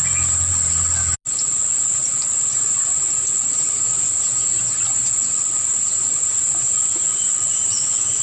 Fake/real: real